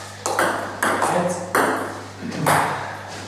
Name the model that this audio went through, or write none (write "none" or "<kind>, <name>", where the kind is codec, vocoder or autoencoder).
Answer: none